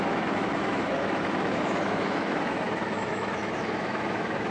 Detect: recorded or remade remade